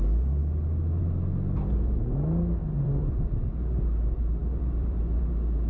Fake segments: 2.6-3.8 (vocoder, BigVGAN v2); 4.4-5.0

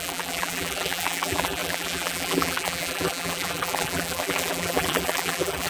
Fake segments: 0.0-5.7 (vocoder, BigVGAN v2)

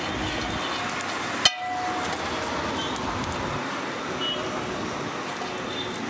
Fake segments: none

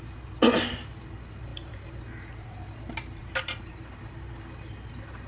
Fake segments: 1.5-2.0 (vocoder, BigVGAN v2); 3.2-3.9

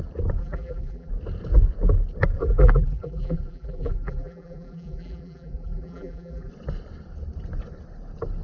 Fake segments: 0.4-1.1 (vocoder, BigVGAN v2); 2.4-6.5